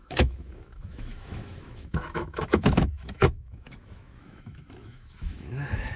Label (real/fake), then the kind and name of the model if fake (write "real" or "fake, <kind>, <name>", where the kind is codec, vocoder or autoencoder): fake, autoencoder, DAC-VAE